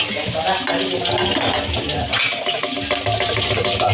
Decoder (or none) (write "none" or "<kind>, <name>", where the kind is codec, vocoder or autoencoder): none